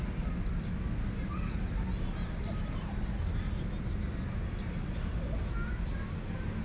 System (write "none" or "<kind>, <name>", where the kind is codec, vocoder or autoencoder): none